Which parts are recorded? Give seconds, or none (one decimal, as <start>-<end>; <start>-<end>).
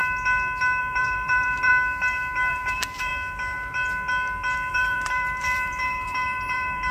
0.0-0.8; 1.7-2.5; 3.1-4.7